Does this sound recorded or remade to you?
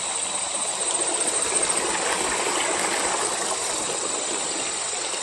recorded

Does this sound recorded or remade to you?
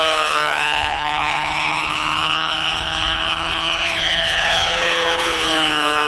remade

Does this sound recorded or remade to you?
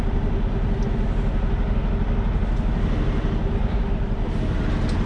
recorded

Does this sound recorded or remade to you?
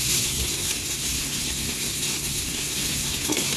remade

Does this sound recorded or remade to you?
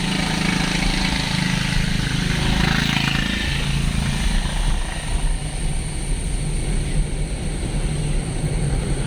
recorded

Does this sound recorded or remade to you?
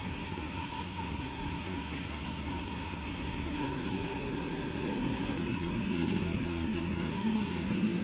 remade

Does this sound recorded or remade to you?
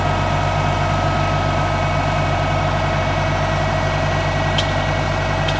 recorded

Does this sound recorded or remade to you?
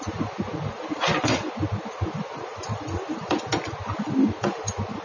recorded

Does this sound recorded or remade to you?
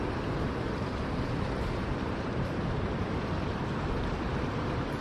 remade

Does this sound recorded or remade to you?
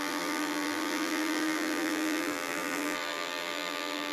remade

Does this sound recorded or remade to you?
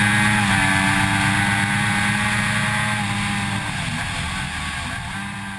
recorded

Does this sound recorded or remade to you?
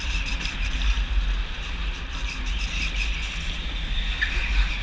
recorded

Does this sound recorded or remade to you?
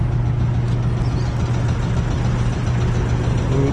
recorded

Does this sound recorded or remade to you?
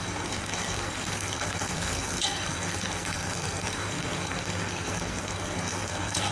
remade